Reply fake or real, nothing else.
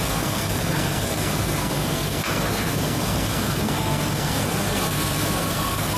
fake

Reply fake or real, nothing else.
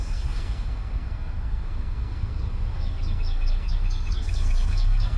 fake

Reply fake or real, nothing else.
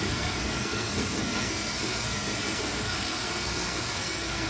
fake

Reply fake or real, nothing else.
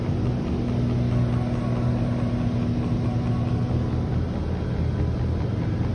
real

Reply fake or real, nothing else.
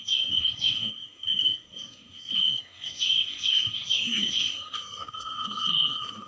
fake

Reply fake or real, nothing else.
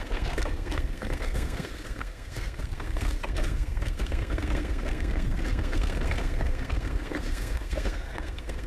fake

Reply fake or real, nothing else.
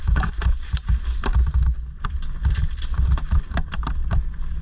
real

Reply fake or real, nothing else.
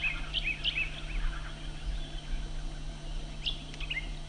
real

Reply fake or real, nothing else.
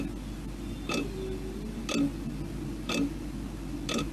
real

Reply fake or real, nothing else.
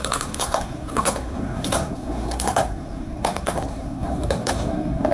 fake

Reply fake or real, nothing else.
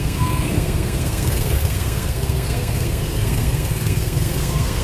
fake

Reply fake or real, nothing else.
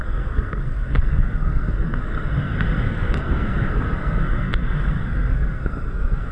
fake